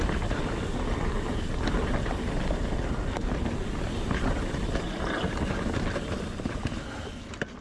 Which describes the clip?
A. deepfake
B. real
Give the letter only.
B